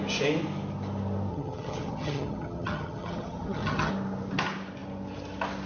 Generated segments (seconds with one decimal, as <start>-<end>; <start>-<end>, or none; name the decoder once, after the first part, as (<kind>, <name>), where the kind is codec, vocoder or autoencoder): 1.3-3.9 (vocoder, HiFi-GAN)